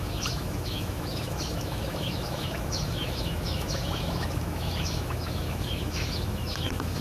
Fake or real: fake